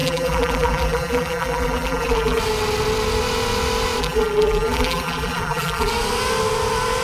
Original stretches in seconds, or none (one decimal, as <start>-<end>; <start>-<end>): 2.4-4.0; 5.9-7.0